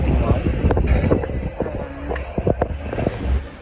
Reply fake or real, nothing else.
real